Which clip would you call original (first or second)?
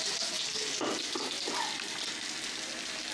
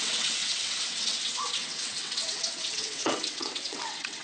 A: first